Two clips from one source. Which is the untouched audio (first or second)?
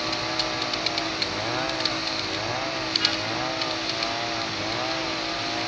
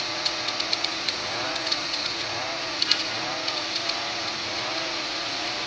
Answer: first